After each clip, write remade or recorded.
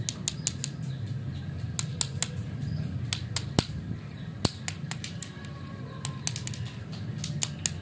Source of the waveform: recorded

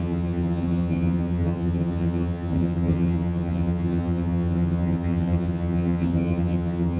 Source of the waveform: remade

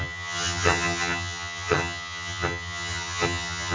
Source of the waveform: remade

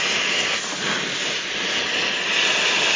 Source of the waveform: recorded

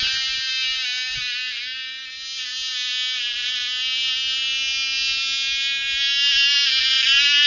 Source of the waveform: recorded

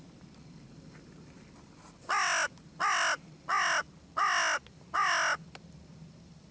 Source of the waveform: recorded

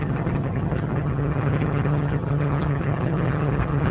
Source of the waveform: remade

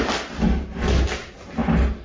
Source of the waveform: recorded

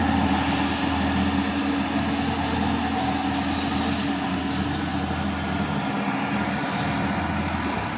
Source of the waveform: recorded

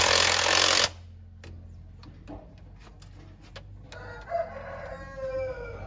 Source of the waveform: recorded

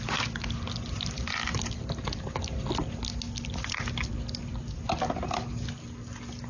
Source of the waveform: recorded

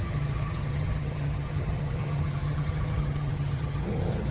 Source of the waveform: remade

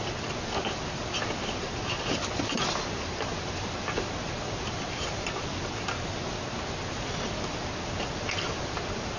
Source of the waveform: recorded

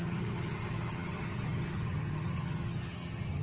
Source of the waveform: remade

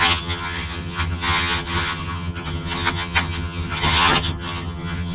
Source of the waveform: remade